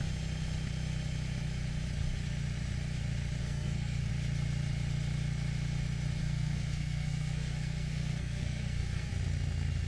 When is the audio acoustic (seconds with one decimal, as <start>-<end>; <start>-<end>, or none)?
0.0-3.4; 4.1-6.2; 9.1-9.9